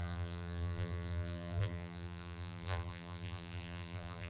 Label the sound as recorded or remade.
remade